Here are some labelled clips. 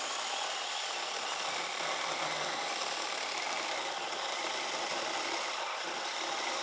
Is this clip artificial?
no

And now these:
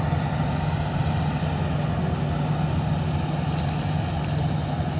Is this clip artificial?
no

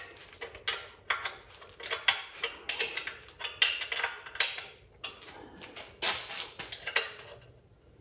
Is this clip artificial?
no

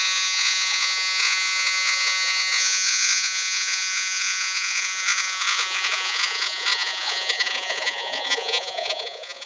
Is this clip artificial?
yes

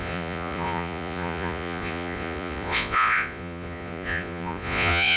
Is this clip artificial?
yes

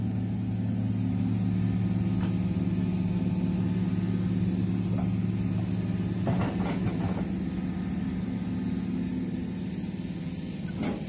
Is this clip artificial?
no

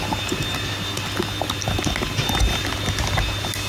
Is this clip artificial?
no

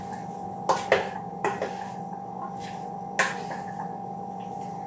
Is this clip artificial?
no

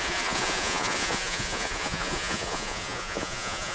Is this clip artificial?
yes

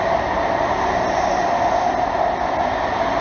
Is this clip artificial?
no